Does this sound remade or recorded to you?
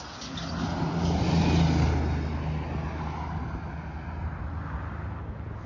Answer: recorded